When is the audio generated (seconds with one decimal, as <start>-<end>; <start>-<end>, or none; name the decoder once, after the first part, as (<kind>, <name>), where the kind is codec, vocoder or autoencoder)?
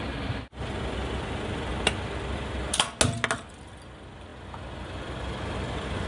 none